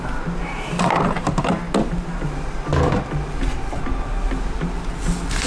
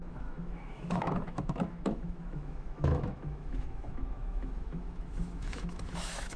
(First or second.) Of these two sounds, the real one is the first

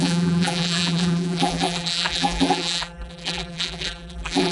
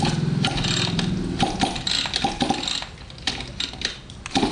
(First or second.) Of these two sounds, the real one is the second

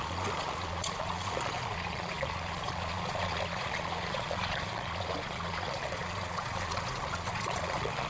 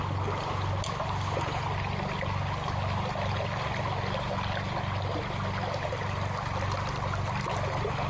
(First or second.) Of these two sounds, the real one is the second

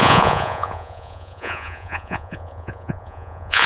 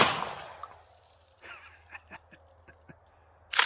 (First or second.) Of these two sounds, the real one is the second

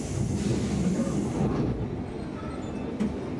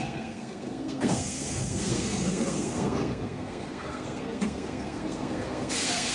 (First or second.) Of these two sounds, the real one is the first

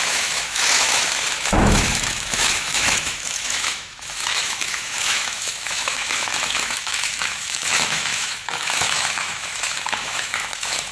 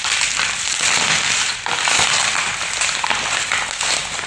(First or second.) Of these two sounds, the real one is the second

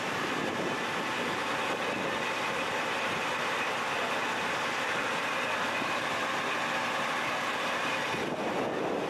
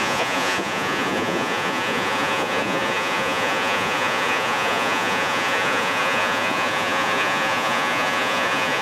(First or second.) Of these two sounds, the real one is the first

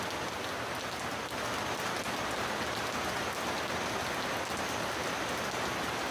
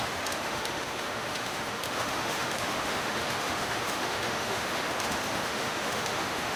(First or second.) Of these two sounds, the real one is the first